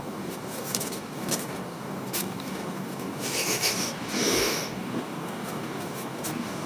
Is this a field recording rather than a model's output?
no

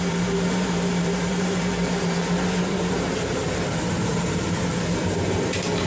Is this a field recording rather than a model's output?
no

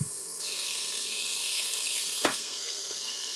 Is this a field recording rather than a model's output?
no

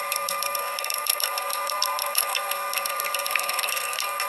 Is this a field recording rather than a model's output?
no